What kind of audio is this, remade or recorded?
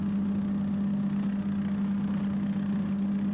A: recorded